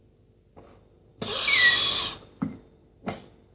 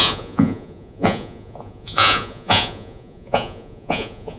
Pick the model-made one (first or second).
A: second